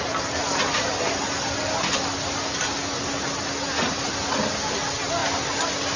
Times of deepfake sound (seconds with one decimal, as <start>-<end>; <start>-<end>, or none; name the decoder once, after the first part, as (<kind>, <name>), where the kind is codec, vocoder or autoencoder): none